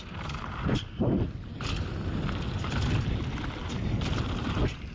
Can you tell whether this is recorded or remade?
recorded